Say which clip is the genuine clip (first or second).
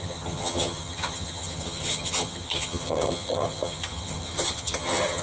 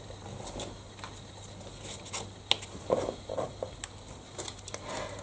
second